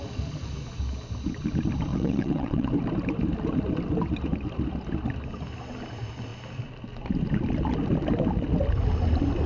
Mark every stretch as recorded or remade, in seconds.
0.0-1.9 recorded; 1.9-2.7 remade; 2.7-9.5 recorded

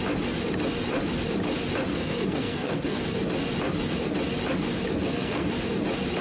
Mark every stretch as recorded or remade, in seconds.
0.0-1.9 recorded; 1.9-3.0 remade; 3.0-5.0 recorded; 5.0-5.5 remade; 5.5-6.2 recorded

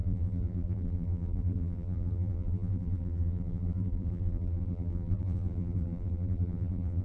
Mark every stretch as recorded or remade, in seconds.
0.0-7.0 remade

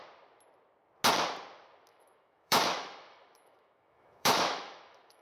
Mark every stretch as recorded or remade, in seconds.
0.0-1.9 recorded; 1.9-5.2 remade